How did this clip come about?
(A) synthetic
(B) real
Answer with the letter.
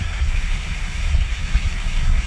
A